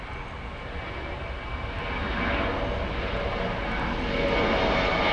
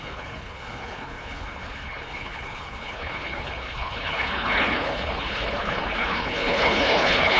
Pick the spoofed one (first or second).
second